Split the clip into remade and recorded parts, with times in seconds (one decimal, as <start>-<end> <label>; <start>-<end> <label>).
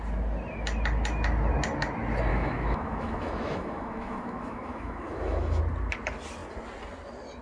0.0-2.3 recorded; 2.3-5.6 remade; 5.6-7.4 recorded